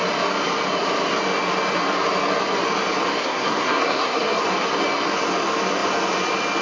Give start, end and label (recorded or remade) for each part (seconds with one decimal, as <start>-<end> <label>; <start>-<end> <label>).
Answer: 0.0-3.2 recorded; 3.2-4.4 remade; 4.4-6.6 recorded